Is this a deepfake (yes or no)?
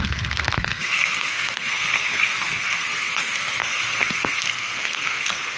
yes